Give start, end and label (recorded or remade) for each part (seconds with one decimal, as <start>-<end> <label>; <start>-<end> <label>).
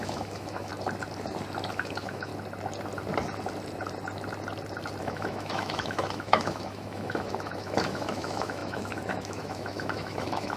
0.0-0.7 remade; 0.7-1.7 recorded; 1.7-2.3 remade; 2.3-5.0 recorded; 5.0-10.6 remade